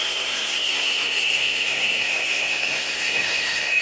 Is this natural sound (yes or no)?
no